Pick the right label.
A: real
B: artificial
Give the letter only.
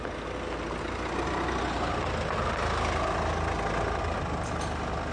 A